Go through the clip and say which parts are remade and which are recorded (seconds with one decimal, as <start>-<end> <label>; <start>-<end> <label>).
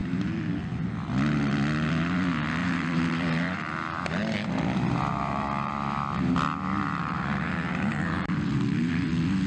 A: 0.0-2.6 recorded; 2.6-4.0 remade; 4.0-5.1 recorded; 5.1-5.7 remade; 5.7-7.0 recorded; 7.0-8.5 remade; 8.5-9.5 recorded